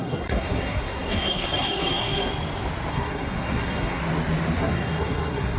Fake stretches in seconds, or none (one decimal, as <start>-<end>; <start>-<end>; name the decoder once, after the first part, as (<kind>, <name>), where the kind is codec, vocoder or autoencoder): 0.0-2.3 (codec, SNAC); 2.9-4.0; 4.6-5.6